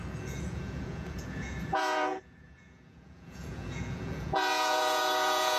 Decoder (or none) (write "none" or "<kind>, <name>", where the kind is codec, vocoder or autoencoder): vocoder, Vocos